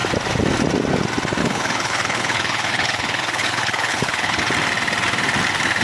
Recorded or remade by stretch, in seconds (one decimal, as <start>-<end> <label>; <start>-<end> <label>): 0.0-1.4 recorded; 1.4-4.4 remade; 4.4-5.8 recorded